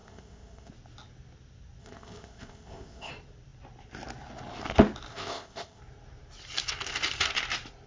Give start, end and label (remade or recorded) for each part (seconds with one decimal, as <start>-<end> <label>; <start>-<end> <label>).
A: 0.0-0.7 remade; 0.7-1.8 recorded; 1.8-3.1 remade; 3.1-5.1 recorded; 5.1-5.8 remade; 5.8-7.9 recorded